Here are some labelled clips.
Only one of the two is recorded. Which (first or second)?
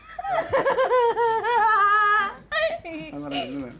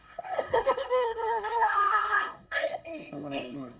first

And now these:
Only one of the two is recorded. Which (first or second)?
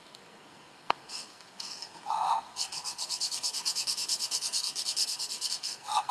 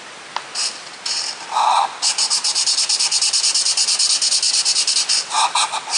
second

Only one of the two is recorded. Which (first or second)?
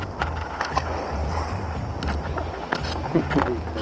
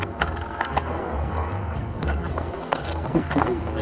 first